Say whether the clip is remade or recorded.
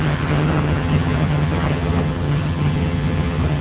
remade